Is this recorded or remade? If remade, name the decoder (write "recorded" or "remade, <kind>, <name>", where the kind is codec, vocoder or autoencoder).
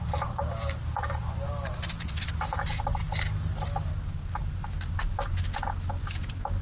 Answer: recorded